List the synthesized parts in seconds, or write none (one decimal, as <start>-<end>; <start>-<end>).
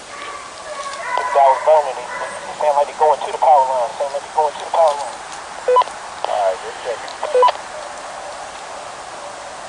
3.9-5.1; 7.1-8.8